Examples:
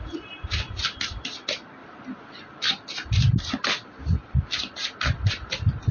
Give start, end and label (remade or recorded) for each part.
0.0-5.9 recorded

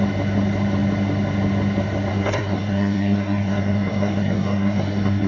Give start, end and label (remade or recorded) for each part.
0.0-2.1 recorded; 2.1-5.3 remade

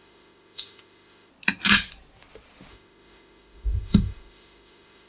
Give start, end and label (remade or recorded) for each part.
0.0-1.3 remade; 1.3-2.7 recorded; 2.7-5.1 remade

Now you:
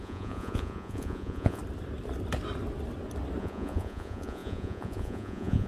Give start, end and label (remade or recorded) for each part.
0.0-1.6 remade; 1.6-3.4 recorded; 3.4-5.7 remade

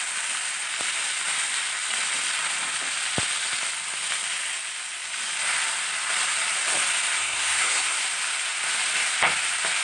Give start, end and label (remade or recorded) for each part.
0.0-7.2 recorded; 7.2-8.0 remade; 8.0-9.8 recorded

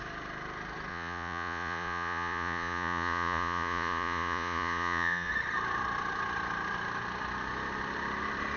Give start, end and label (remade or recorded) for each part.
0.0-0.9 recorded; 0.9-5.3 remade; 5.3-8.6 recorded

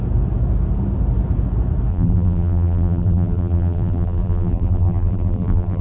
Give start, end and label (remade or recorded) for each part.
0.0-1.9 recorded; 1.9-5.8 remade